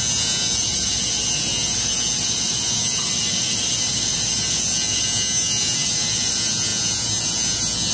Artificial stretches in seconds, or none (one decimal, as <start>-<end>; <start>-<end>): none